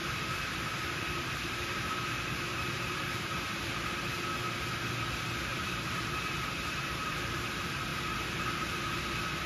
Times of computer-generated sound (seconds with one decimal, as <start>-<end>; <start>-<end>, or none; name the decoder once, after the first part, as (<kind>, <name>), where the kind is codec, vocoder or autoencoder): 0.0-2.1 (vocoder, BigVGAN v2); 2.5-3.8; 5.5-7.2